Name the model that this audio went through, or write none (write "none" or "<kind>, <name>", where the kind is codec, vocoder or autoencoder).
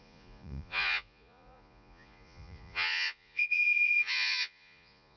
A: vocoder, Vocos